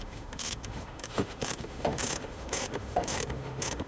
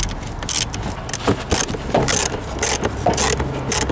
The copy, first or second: first